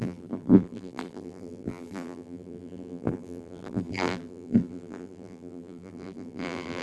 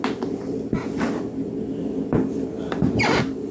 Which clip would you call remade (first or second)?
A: first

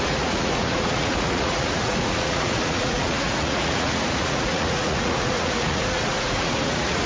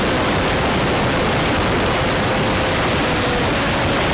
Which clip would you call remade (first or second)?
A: first